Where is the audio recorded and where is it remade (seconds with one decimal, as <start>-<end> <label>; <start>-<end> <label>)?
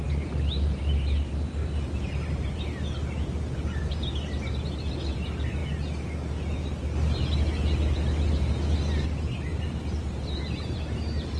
0.0-9.5 recorded; 9.5-10.8 remade; 10.8-11.4 recorded